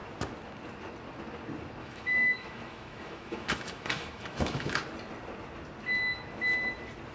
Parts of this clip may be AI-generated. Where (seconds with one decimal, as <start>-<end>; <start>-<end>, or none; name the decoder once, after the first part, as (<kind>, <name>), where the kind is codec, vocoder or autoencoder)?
1.8-4.8 (autoencoder, DAC-VAE)